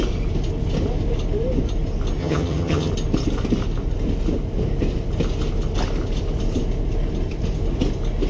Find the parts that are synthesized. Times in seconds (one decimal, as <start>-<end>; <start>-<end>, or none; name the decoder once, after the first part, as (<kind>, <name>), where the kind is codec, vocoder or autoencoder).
2.2-2.9 (vocoder, HiFi-GAN)